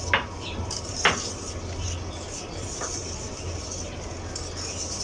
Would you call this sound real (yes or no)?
yes